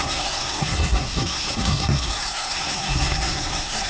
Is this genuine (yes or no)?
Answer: no